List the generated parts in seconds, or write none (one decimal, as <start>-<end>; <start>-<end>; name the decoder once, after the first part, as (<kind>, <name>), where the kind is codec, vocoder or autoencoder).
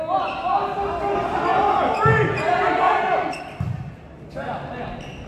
none